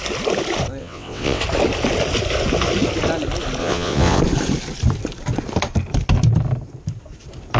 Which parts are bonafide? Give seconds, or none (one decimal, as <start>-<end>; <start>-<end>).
0.0-0.8; 1.4-3.6; 4.2-7.6